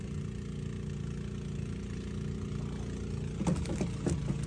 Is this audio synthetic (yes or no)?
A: no